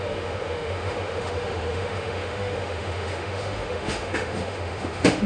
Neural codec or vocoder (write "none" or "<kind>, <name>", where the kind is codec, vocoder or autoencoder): autoencoder, DAC-VAE